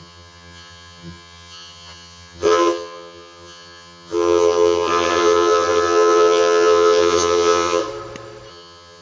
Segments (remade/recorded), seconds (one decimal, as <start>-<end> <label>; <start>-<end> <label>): 0.0-7.8 remade; 7.8-8.5 recorded; 8.5-9.0 remade